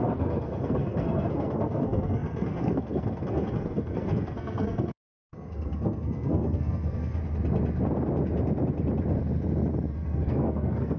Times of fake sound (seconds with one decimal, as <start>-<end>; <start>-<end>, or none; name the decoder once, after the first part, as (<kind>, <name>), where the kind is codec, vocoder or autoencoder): 0.0-7.2 (codec, SNAC); 9.9-11.0